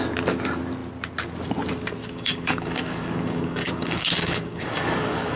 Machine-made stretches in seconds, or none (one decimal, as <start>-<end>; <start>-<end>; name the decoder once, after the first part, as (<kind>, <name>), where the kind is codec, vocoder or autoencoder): 2.0-5.4 (codec, DAC)